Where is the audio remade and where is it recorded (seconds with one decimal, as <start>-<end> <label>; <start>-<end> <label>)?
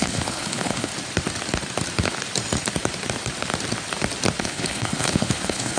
0.0-0.9 remade; 0.9-4.4 recorded; 4.4-5.8 remade